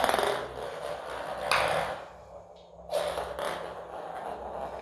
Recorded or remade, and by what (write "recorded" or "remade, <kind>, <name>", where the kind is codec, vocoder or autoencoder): recorded